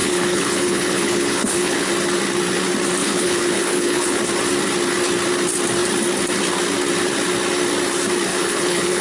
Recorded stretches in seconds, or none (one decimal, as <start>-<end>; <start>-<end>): 1.9-3.0; 4.2-8.3